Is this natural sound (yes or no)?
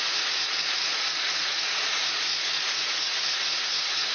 no